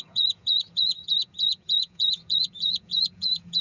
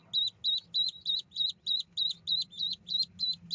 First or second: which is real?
second